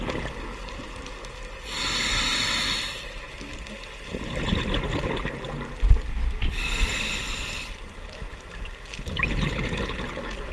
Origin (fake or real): real